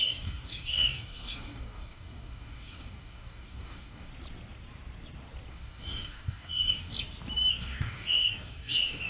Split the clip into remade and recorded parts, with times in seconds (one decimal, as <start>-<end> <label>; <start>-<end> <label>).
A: 0.0-4.1 remade; 4.1-5.5 recorded; 5.5-6.9 remade; 6.9-7.5 recorded; 7.5-9.1 remade